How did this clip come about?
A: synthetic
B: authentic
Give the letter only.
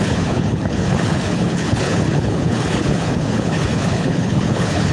A